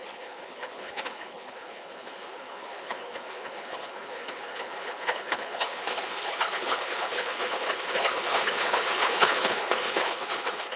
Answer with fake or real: fake